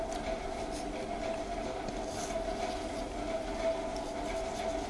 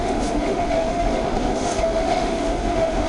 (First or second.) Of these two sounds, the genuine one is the first